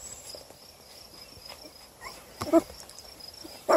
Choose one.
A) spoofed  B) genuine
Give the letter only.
B